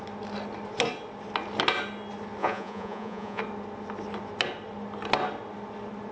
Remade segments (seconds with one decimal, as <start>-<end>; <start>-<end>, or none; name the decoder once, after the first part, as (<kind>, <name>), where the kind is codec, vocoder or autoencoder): 2.4-3.4 (vocoder, Vocos)